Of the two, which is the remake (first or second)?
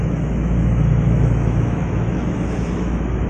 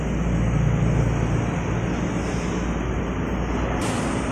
first